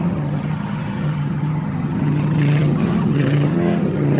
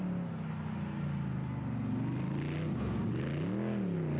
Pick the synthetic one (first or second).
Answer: first